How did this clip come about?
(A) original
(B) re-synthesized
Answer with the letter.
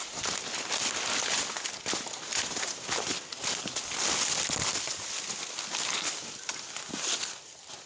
A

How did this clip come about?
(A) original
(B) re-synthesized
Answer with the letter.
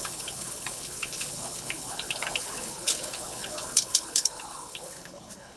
B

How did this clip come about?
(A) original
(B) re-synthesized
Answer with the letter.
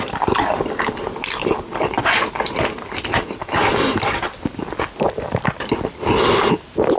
A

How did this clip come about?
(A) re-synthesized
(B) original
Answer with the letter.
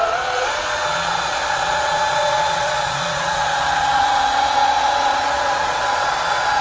A